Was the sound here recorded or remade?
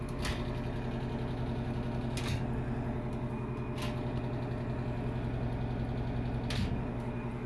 recorded